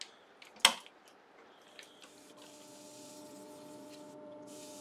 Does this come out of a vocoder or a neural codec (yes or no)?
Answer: no